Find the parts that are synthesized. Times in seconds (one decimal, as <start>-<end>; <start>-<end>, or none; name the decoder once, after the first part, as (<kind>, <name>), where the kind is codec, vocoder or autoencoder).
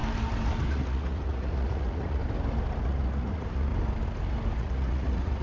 0.7-2.2 (vocoder, Vocos); 2.8-3.7; 4.6-5.4